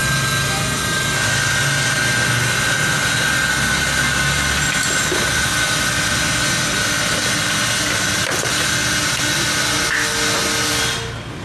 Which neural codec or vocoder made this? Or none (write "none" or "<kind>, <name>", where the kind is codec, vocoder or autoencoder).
none